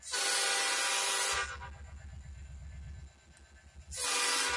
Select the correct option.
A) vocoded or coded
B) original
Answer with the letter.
B